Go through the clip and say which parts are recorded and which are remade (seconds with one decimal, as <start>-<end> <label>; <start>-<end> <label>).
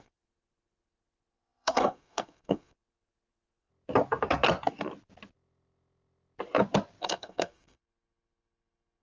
0.0-3.7 remade; 3.7-7.0 recorded; 7.0-9.0 remade